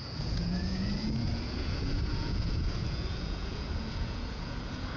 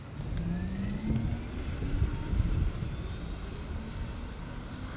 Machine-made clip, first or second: first